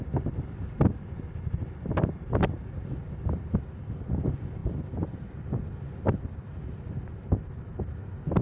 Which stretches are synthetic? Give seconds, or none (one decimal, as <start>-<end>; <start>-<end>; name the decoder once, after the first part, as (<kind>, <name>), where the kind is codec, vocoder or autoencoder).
none